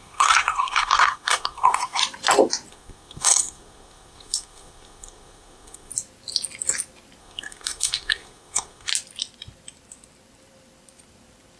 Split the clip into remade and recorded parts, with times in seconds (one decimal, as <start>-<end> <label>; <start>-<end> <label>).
0.0-2.0 remade; 2.0-2.7 recorded; 2.7-5.9 remade; 5.9-7.2 recorded; 7.2-8.9 remade; 8.9-11.6 recorded